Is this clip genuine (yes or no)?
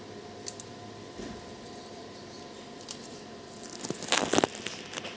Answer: yes